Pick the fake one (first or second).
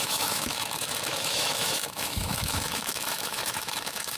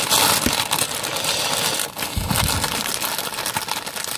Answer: first